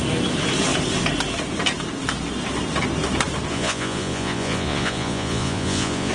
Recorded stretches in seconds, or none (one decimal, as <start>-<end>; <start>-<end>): 0.0-3.5